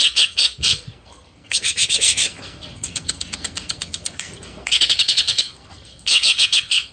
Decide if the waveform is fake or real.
fake